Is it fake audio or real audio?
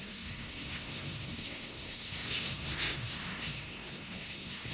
fake